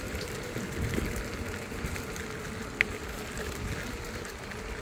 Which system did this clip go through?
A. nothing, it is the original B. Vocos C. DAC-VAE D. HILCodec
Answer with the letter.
A